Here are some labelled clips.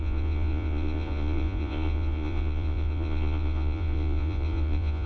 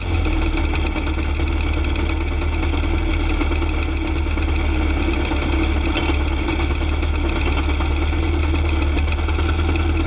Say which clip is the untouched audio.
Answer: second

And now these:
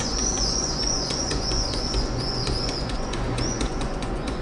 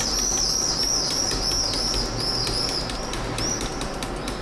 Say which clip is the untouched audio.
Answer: second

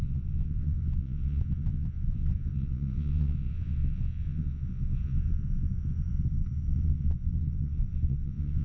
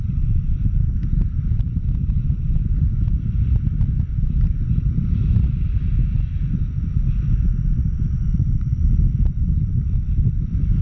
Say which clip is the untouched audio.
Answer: second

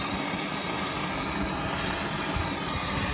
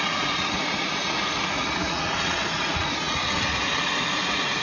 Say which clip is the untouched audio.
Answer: first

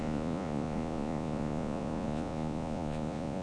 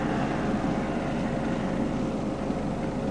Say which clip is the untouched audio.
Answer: second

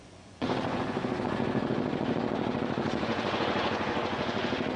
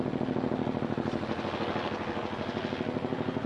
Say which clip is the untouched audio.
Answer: second